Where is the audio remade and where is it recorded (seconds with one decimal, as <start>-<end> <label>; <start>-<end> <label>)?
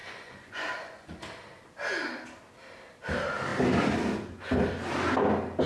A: 0.0-1.2 remade; 1.2-5.7 recorded